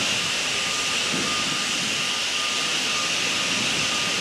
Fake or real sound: real